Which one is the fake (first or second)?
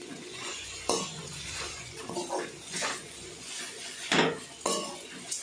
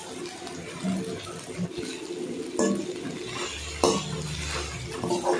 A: first